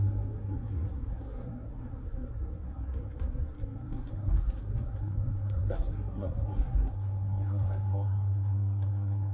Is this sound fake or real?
fake